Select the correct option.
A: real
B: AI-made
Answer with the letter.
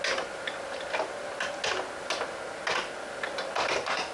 A